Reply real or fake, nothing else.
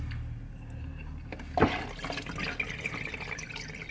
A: real